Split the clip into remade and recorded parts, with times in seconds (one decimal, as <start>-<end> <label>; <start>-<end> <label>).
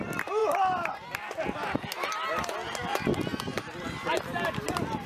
0.0-3.3 recorded; 3.3-5.1 remade